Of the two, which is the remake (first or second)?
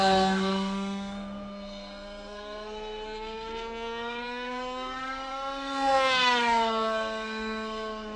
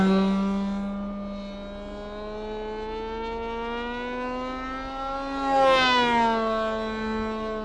first